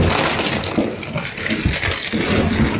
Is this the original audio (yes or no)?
yes